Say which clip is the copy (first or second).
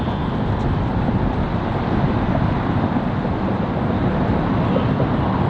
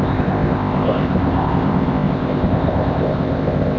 second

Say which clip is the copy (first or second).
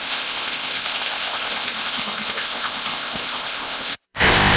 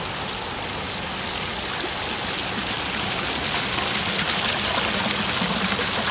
first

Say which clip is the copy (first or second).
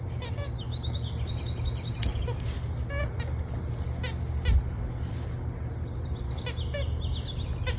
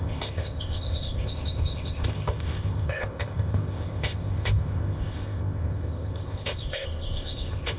second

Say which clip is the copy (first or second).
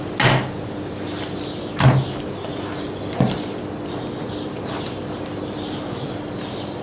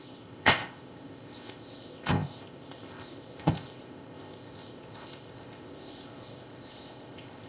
second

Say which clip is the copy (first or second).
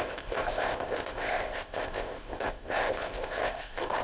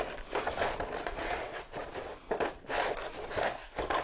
first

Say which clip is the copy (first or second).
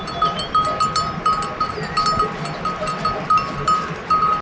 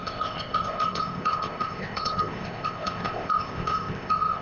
second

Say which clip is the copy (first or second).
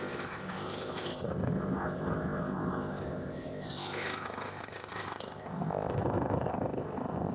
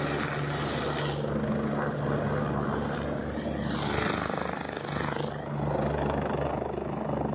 first